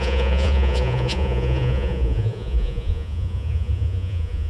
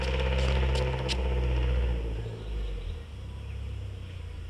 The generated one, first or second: first